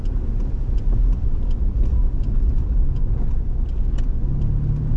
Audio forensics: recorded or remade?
recorded